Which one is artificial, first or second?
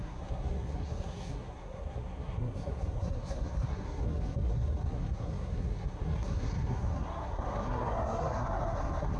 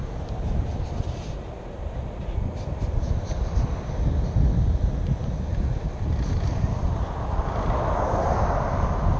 first